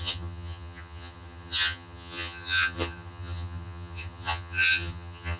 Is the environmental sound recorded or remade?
remade